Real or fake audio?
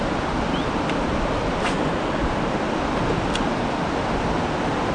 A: real